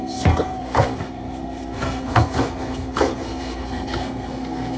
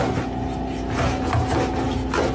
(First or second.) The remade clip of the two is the first